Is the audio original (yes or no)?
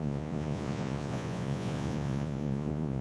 no